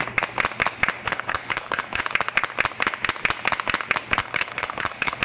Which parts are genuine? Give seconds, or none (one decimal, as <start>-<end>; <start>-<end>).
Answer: 0.0-1.0; 2.0-4.2